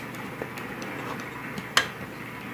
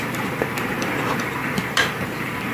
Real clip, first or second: first